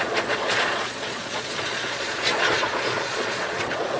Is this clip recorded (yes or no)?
no